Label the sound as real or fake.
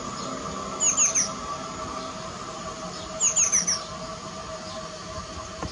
real